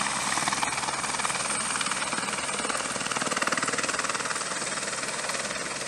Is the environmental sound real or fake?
real